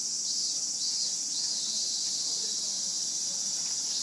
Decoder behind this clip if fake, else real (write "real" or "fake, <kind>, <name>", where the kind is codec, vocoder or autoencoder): real